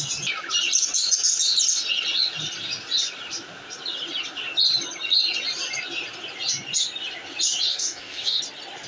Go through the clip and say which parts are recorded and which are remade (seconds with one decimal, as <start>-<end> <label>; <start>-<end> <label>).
0.0-7.7 recorded; 7.7-8.4 remade; 8.4-8.9 recorded